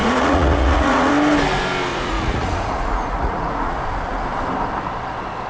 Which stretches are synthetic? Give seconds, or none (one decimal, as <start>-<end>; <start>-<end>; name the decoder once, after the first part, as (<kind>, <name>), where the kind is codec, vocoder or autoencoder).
0.0-1.1 (vocoder, Vocos); 1.9-3.7